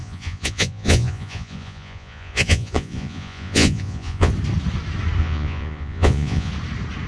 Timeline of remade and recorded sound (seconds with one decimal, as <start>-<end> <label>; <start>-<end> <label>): 0.0-4.3 remade; 4.3-5.2 recorded; 5.2-6.5 remade; 6.5-7.1 recorded